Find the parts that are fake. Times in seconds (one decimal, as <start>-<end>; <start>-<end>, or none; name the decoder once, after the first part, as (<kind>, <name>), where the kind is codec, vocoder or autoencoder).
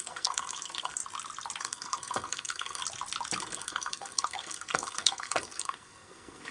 0.0-1.0 (codec, SNAC); 1.6-2.8; 3.4-6.5